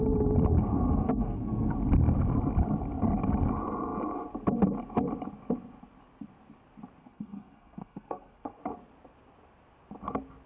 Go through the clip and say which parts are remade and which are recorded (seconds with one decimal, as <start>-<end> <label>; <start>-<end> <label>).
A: 0.0-0.7 recorded; 0.7-1.7 remade; 1.7-7.0 recorded; 7.0-8.6 remade; 8.6-10.5 recorded